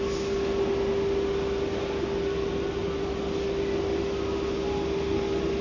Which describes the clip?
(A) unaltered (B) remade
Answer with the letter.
A